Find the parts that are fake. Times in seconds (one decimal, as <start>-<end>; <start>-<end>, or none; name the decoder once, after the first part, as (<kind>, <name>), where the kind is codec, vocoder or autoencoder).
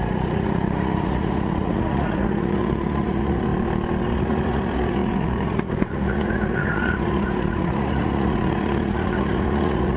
0.0-3.5 (vocoder, Vocos); 4.0-10.0